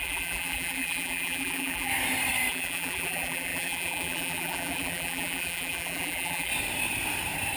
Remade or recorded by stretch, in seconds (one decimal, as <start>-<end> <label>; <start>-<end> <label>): 0.0-1.9 remade; 1.9-2.5 recorded; 2.5-6.5 remade; 6.5-7.6 recorded